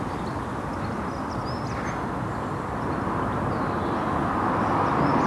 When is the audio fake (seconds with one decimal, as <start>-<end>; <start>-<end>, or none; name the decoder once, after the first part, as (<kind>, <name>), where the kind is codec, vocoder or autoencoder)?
none